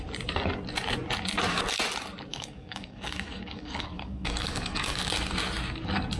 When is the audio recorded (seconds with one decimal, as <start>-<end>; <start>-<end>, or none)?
0.0-2.3; 5.1-6.2

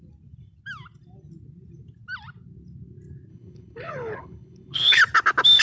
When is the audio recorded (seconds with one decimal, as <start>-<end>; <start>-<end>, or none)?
0.0-3.3; 5.0-5.6

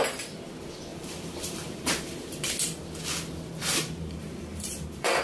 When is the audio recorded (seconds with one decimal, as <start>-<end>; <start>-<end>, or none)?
0.0-0.9; 2.5-3.6

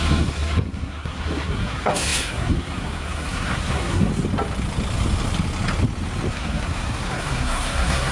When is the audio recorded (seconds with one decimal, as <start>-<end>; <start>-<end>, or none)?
4.1-6.3